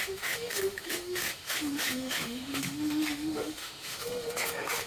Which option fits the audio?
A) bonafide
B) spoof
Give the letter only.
B